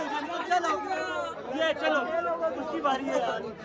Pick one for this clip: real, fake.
real